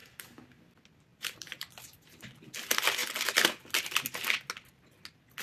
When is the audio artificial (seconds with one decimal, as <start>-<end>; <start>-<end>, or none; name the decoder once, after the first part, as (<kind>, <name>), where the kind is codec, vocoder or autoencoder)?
0.0-0.6 (vocoder, BigVGAN v2); 1.1-2.4